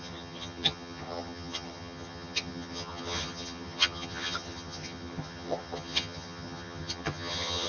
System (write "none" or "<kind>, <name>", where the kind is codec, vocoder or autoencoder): vocoder, HiFi-GAN